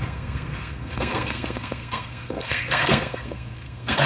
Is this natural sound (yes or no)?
no